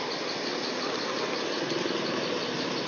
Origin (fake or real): real